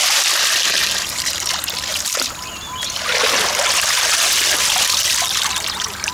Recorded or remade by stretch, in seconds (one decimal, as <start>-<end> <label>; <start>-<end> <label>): 0.0-6.1 recorded